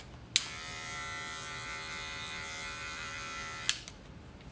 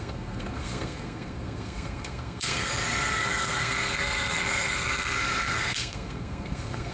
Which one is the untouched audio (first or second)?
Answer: first